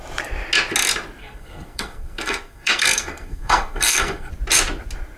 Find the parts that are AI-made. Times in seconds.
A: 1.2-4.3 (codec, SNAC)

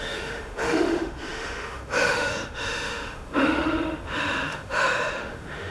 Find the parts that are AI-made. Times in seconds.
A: 0.0-5.7 (autoencoder, DAC-VAE)

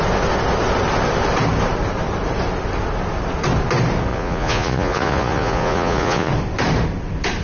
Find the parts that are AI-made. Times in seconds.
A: 4.1-6.3 (vocoder, Vocos)

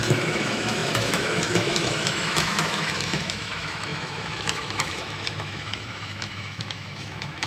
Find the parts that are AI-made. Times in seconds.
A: 0.0-7.5 (autoencoder, DAC-VAE)

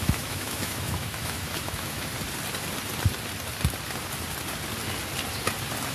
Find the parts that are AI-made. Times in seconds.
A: 0.0-2.1 (autoencoder, DAC-VAE)